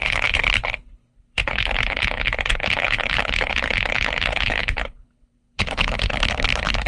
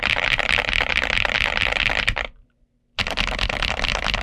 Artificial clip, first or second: first